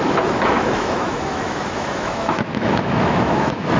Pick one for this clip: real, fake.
fake